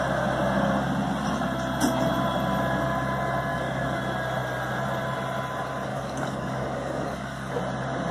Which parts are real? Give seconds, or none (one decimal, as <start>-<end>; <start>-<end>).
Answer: 0.0-3.5; 4.0-5.9; 7.5-8.1